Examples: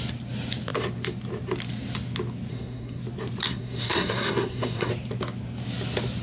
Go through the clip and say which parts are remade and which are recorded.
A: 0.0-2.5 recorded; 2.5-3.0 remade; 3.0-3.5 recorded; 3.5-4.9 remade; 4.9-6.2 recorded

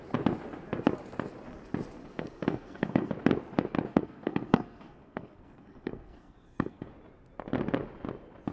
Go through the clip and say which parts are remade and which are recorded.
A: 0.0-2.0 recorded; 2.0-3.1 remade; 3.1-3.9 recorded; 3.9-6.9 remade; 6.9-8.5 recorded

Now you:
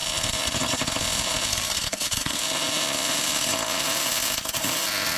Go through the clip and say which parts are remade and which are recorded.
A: 0.0-1.5 recorded; 1.5-2.4 remade; 2.4-5.2 recorded